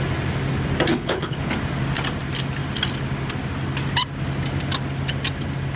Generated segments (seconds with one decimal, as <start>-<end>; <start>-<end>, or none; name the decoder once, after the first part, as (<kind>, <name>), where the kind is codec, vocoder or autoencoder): 0.9-1.5 (codec, HILCodec)